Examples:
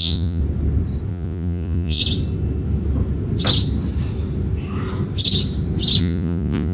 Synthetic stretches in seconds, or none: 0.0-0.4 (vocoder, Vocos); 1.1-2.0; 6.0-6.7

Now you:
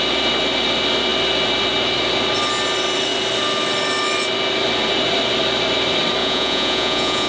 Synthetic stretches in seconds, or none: 6.2-7.3 (vocoder, Vocos)

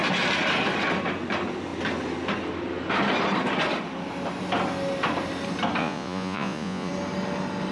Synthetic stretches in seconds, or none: 5.8-6.9 (vocoder, Vocos)